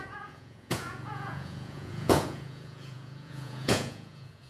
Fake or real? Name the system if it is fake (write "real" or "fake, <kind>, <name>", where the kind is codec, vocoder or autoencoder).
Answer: fake, vocoder, Vocos